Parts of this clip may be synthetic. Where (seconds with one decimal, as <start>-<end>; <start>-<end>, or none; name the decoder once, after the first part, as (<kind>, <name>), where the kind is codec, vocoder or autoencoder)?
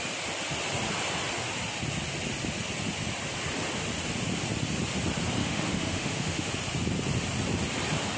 5.4-6.5 (autoencoder, DAC-VAE)